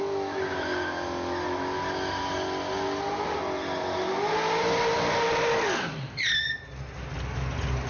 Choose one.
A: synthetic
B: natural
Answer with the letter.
B